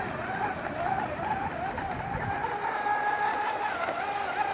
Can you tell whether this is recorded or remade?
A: recorded